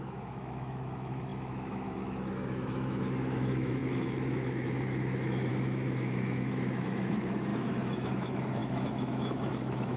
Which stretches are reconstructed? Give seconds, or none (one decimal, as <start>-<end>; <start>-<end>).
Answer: 0.0-10.0